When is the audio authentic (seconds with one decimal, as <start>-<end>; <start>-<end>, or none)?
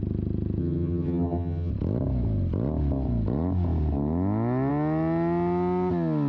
0.0-0.6; 1.7-6.3